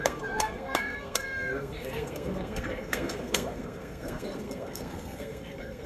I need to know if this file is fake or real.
fake